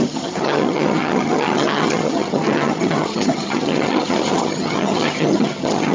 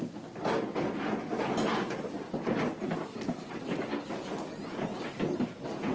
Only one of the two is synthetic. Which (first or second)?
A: first